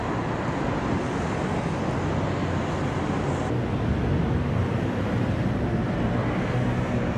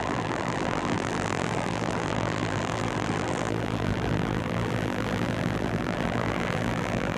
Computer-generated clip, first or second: second